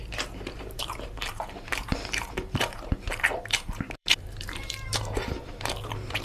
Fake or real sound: fake